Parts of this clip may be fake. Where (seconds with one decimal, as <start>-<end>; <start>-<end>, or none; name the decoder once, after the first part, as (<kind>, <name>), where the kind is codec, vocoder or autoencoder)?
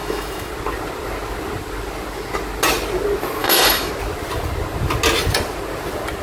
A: 0.0-0.5 (autoencoder, DAC-VAE); 3.4-3.9